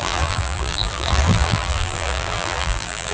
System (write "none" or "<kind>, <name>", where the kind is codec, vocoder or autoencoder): vocoder, BigVGAN v2